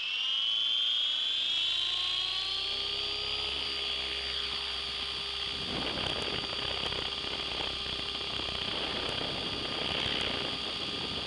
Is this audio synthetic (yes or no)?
no